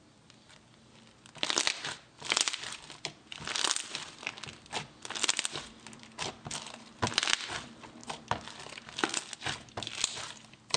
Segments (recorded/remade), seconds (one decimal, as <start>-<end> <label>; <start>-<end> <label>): 0.0-10.8 recorded